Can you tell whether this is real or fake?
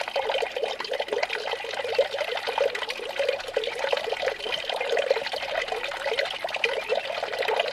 real